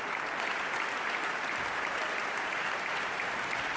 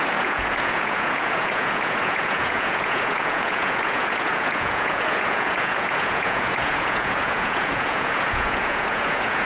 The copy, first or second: second